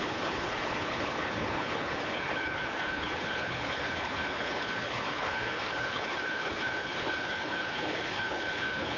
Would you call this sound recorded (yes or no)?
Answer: no